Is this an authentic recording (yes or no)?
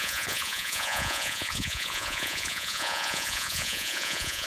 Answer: no